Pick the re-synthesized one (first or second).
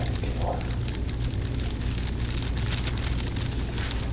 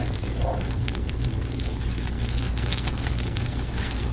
second